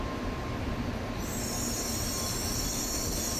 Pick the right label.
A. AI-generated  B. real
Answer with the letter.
B